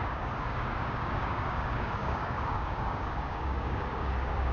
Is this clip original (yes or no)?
no